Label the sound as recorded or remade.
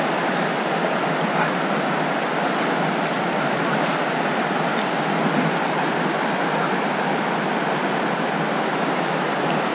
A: recorded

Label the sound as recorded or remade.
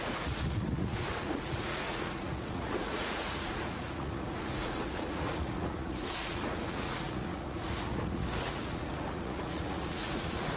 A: remade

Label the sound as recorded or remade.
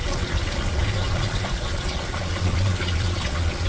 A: remade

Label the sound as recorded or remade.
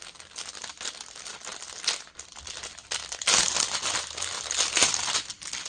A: recorded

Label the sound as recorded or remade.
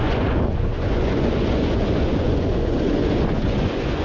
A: remade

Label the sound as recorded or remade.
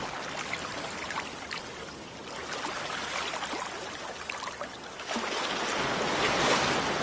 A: recorded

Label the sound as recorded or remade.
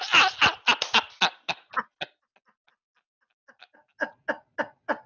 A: recorded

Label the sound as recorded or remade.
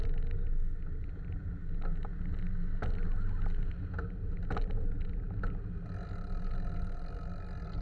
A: recorded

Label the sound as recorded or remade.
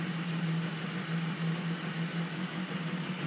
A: recorded